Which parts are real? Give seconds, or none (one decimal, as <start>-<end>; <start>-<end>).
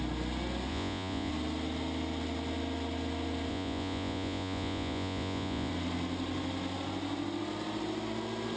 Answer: 0.0-0.7; 1.3-3.5; 5.7-8.6